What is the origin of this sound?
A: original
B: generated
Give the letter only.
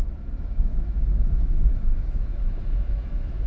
B